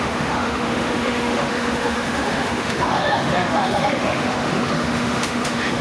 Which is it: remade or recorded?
remade